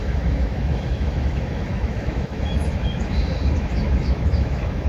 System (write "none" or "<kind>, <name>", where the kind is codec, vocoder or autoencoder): autoencoder, DAC-VAE